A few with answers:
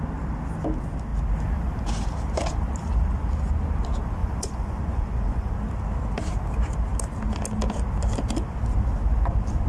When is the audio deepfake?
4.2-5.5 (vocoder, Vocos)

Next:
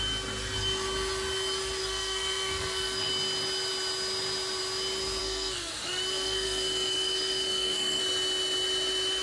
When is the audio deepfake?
1.8-3.1 (codec, SNAC); 5.2-8.0

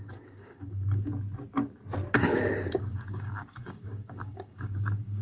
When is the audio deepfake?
0.0-1.1 (codec, DAC); 2.8-5.2

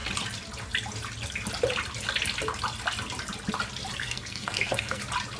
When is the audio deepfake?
4.0-5.0 (codec, SNAC)

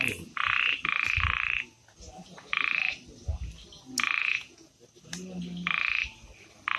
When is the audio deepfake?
4.2-4.8 (vocoder, Vocos)

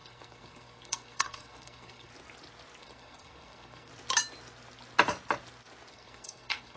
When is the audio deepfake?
0.0-2.1 (codec, SNAC); 2.8-3.9; 5.9-6.8